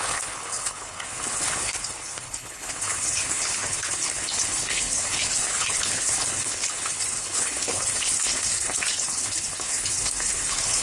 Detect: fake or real fake